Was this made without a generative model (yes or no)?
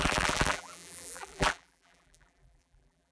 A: no